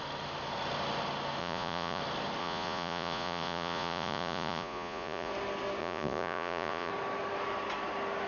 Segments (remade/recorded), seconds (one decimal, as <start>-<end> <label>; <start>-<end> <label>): 0.0-1.4 recorded; 1.4-2.0 remade; 2.0-2.4 recorded; 2.4-5.3 remade; 5.3-5.8 recorded; 5.8-6.9 remade; 6.9-8.3 recorded